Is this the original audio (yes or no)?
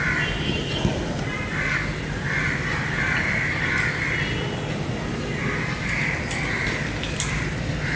yes